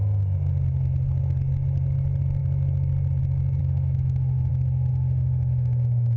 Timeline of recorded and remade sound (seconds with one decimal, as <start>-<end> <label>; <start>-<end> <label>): 0.0-3.6 recorded; 3.6-4.5 remade; 4.5-4.9 recorded; 4.9-6.2 remade